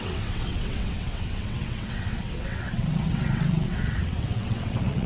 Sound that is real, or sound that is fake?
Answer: fake